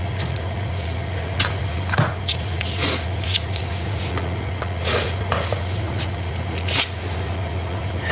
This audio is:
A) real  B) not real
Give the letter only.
B